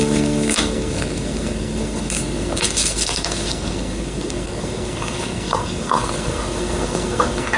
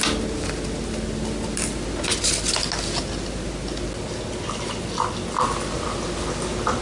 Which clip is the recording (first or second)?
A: second